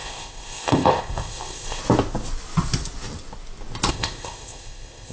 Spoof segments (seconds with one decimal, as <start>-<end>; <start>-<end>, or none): 0.0-1.8; 3.9-5.1